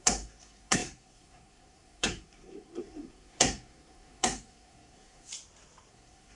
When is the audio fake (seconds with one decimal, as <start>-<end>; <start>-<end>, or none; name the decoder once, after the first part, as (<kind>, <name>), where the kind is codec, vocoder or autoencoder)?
0.0-5.3 (codec, SNAC); 5.9-6.4